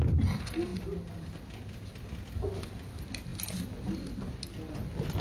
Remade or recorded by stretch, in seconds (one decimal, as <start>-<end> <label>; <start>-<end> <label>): 0.0-0.7 remade; 0.7-2.2 recorded; 2.2-3.3 remade; 3.3-4.7 recorded; 4.7-5.2 remade